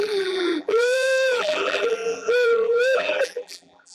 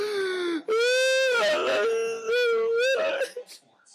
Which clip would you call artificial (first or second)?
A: first